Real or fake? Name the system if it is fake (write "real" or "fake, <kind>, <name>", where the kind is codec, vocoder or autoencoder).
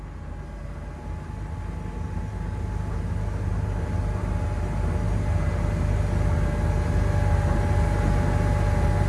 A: real